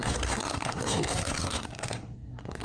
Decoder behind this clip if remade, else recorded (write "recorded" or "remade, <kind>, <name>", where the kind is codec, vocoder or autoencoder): remade, codec, SNAC